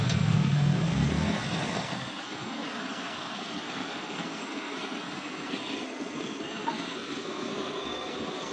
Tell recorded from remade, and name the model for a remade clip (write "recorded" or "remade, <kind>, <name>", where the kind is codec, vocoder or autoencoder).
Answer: remade, codec, SNAC